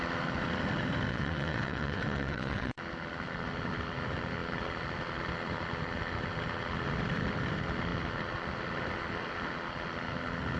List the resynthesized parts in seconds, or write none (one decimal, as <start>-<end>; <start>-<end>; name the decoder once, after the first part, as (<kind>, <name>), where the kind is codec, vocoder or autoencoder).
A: 1.1-2.8 (vocoder, WaveNeXt)